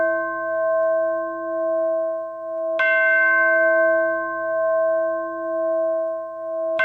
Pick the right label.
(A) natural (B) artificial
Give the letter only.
A